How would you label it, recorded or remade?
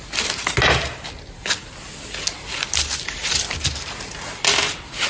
recorded